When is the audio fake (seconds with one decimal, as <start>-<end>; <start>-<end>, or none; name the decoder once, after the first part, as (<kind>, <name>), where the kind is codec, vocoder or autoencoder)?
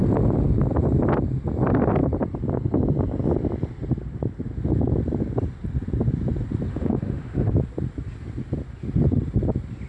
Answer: 6.7-7.5 (autoencoder, DAC-VAE)